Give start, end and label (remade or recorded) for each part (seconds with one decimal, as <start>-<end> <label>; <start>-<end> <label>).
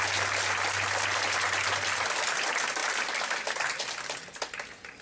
0.0-5.0 recorded